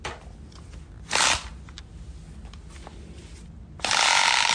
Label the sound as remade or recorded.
recorded